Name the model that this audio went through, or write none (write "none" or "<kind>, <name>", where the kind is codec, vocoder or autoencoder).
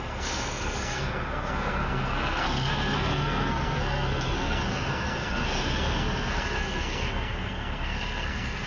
codec, SNAC